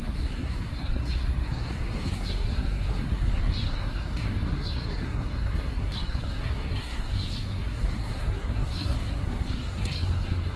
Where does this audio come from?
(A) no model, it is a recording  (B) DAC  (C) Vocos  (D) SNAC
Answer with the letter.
D